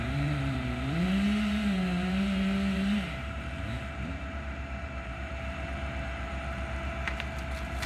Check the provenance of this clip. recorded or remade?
remade